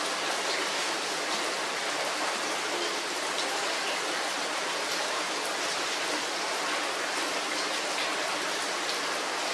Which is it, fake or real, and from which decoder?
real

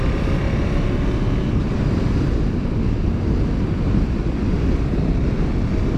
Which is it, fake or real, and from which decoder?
real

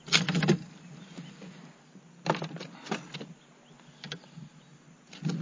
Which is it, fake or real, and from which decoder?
real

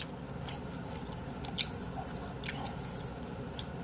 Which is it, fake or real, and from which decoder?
real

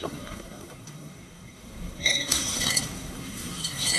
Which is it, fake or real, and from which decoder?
fake, codec, SNAC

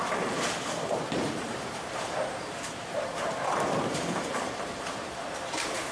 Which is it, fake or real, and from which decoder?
fake, vocoder, BigVGAN v2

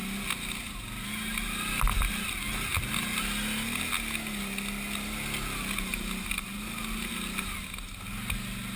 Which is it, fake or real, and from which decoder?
real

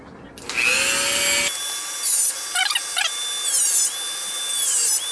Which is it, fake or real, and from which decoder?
real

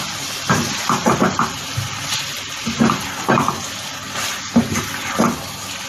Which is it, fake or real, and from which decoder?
real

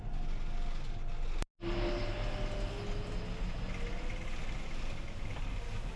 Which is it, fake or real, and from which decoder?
real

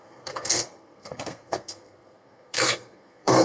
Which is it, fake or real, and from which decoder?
fake, codec, SNAC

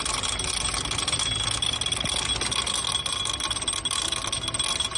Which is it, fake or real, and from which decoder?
real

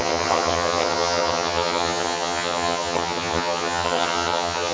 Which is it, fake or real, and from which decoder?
fake, vocoder, HiFi-GAN